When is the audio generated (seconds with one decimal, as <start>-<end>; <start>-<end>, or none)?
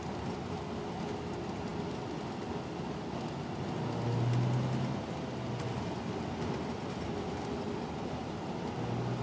none